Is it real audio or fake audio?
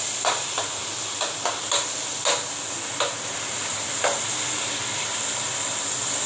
real